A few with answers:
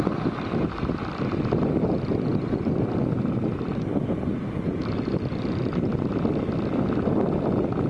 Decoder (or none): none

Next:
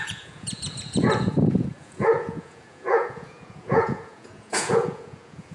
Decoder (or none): vocoder, Vocos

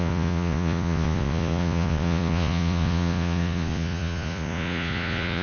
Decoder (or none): vocoder, Vocos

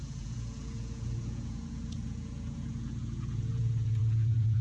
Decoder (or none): vocoder, Vocos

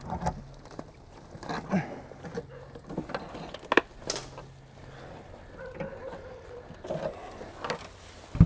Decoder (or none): none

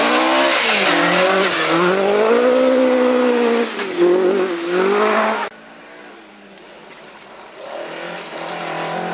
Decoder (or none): none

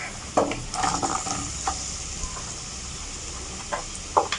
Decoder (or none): none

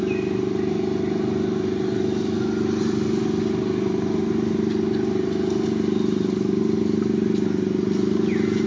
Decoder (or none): none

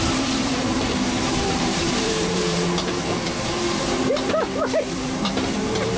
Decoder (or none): vocoder, BigVGAN v2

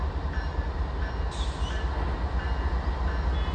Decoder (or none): none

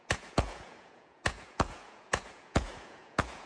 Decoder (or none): vocoder, Vocos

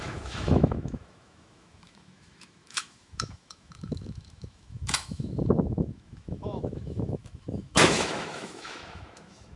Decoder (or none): autoencoder, DAC-VAE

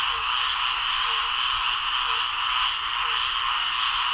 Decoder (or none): none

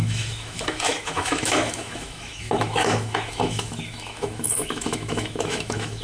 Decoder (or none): autoencoder, DAC-VAE